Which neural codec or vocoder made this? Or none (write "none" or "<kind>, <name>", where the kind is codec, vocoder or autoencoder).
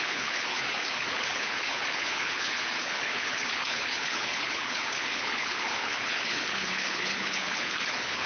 codec, HILCodec